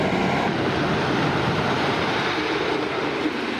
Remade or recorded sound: recorded